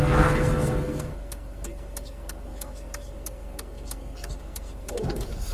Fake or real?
fake